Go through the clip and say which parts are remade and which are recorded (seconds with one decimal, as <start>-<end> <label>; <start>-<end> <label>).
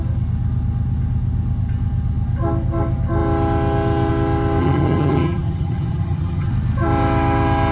0.0-4.6 recorded; 4.6-6.5 remade; 6.5-7.7 recorded